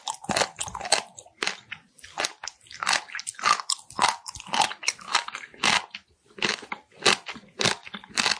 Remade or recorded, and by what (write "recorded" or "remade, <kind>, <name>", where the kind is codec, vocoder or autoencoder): recorded